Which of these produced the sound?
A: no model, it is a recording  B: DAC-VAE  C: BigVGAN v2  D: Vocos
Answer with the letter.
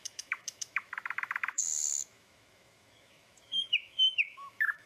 B